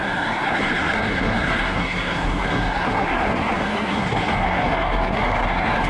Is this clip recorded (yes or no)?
no